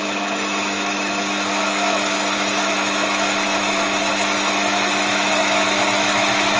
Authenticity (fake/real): fake